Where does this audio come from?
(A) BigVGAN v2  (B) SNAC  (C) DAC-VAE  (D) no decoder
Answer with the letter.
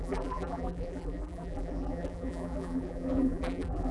A